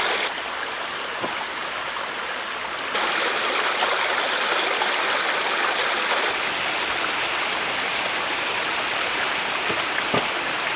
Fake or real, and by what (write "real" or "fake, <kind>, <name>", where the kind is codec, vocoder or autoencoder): real